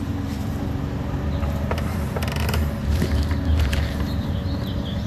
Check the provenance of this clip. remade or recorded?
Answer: remade